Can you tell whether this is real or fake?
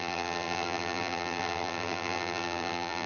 fake